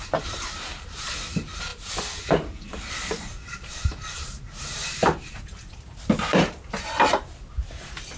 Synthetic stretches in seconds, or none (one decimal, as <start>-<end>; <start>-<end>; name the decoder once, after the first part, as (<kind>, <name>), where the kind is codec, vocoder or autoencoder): none